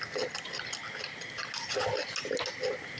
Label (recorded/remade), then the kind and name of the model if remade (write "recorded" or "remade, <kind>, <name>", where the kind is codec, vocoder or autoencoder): recorded